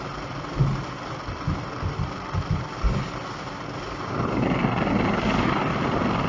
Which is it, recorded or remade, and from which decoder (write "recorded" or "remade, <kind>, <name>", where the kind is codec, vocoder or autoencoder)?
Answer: recorded